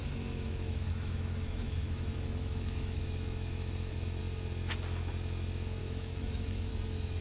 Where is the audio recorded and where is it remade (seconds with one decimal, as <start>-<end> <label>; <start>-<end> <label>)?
0.0-4.2 remade; 4.2-5.8 recorded; 5.8-6.7 remade; 6.7-7.2 recorded